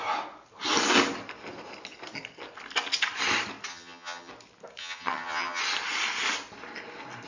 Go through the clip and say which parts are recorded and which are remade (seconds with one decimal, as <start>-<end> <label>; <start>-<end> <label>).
0.0-3.7 recorded; 3.7-4.3 remade; 4.3-4.8 recorded; 4.8-5.6 remade; 5.6-7.3 recorded